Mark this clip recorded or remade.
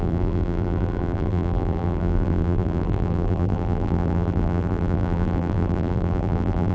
remade